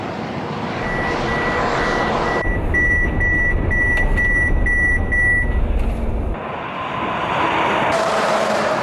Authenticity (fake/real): real